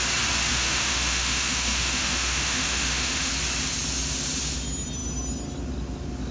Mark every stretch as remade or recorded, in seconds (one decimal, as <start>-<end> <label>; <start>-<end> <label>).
0.0-0.5 recorded; 0.5-3.3 remade; 3.3-6.3 recorded